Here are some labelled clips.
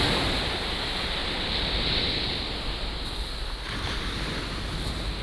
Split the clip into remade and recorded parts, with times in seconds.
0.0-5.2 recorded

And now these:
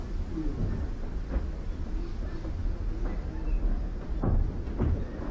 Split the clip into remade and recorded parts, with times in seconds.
0.0-5.3 recorded

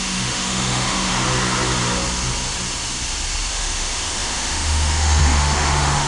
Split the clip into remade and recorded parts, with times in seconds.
0.0-1.1 remade; 1.1-3.5 recorded; 3.5-6.1 remade

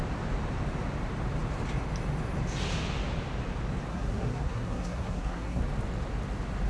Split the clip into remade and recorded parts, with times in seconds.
0.0-3.9 recorded; 3.9-5.6 remade; 5.6-6.7 recorded

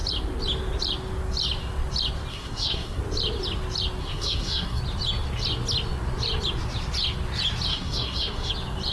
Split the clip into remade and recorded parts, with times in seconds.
0.0-2.3 recorded; 2.3-3.0 remade; 3.0-4.0 recorded; 4.0-4.8 remade; 4.8-7.7 recorded; 7.7-8.5 remade; 8.5-8.9 recorded

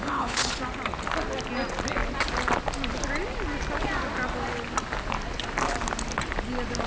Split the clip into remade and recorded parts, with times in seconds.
0.0-0.6 remade; 0.6-6.9 recorded

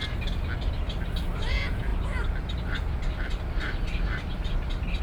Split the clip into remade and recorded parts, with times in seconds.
0.0-1.5 recorded; 1.5-1.9 remade; 1.9-5.0 recorded

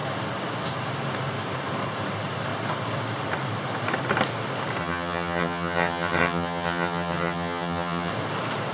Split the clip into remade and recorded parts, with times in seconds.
0.0-4.8 recorded; 4.8-8.1 remade; 8.1-8.7 recorded